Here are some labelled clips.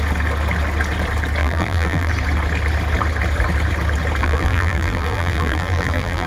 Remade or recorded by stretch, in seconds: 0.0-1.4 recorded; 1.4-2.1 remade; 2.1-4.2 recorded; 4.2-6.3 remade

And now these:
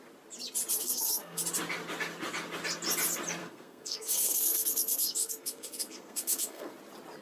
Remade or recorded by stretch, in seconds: 0.0-0.8 recorded; 0.8-1.4 remade; 1.4-3.4 recorded; 3.4-6.7 remade; 6.7-7.2 recorded

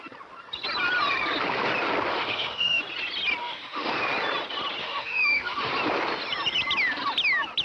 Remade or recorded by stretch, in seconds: 0.0-2.1 recorded; 2.1-2.8 remade; 2.8-3.4 recorded; 3.4-3.9 remade; 3.9-4.8 recorded; 4.8-5.7 remade; 5.7-7.6 recorded

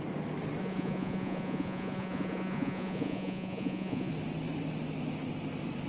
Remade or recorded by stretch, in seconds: 0.0-0.6 recorded; 0.6-4.1 remade; 4.1-5.9 recorded

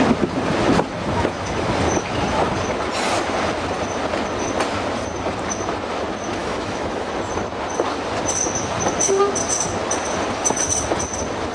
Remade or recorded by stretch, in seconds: 0.0-6.4 recorded; 6.4-7.1 remade; 7.1-11.5 recorded

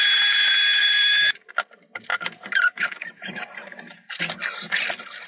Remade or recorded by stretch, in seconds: 0.0-0.8 recorded; 0.8-1.5 remade; 1.5-2.1 recorded; 2.1-4.8 remade; 4.8-5.3 recorded

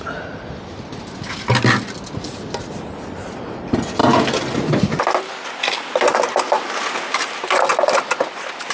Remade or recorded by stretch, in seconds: 0.0-8.7 recorded

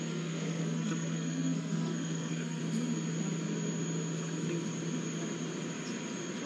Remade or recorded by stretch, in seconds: 0.0-2.6 remade; 2.6-6.5 recorded